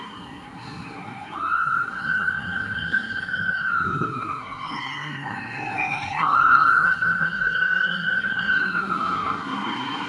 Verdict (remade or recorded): remade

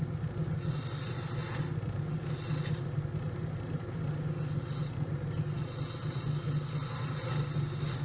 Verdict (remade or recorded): recorded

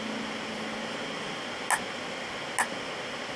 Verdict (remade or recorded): recorded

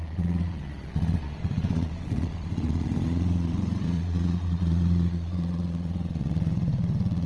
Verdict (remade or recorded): remade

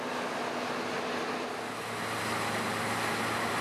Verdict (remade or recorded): recorded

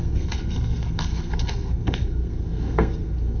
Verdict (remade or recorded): remade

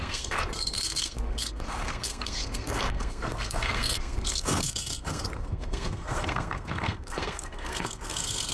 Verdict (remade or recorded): remade